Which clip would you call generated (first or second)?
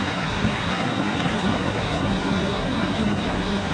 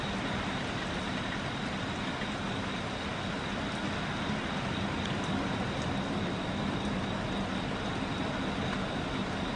first